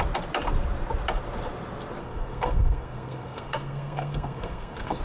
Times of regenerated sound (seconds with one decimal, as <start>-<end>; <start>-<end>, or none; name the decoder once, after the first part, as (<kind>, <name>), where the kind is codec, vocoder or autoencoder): 2.0-5.0 (codec, SNAC)